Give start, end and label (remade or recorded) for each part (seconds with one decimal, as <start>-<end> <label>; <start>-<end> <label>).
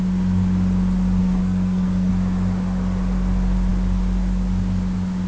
0.0-1.2 recorded; 1.2-2.1 remade; 2.1-5.3 recorded